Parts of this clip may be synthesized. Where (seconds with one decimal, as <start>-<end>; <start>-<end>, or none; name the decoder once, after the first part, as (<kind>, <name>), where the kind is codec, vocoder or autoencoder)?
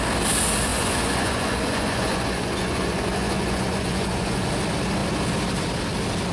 0.7-4.5 (vocoder, Vocos)